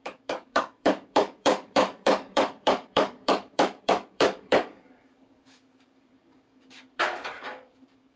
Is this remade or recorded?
remade